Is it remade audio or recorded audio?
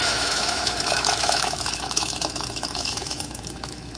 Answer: remade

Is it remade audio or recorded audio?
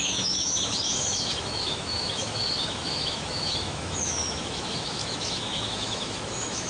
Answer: remade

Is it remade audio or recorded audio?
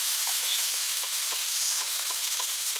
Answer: remade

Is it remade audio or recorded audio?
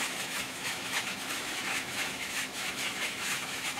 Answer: remade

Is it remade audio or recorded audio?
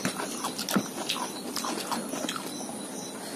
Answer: recorded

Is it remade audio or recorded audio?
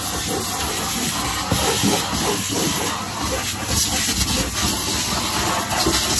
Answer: recorded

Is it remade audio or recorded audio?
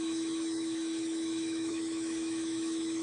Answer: remade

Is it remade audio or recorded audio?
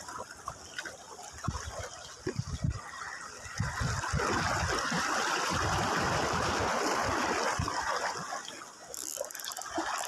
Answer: recorded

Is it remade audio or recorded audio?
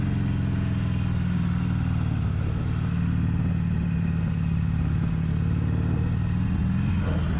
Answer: recorded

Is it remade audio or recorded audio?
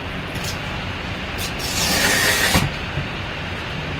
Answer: recorded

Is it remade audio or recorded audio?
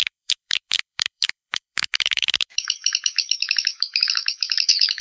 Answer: remade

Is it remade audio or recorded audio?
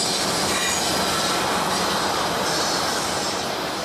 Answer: recorded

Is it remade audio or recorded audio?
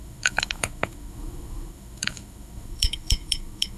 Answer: remade